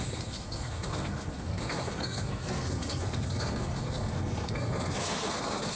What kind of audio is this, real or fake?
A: fake